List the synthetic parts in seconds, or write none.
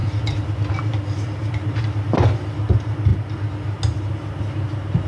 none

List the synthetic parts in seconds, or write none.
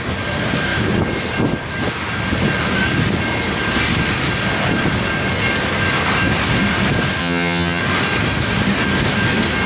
7.2-7.8 (vocoder, HiFi-GAN)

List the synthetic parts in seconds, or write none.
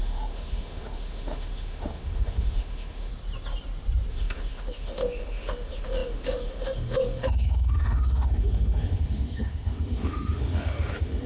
0.0-3.1 (autoencoder, DAC-VAE); 4.1-11.3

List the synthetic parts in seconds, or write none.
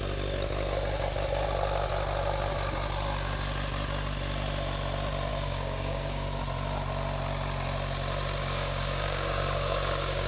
5.3-6.4 (codec, DAC); 8.4-10.3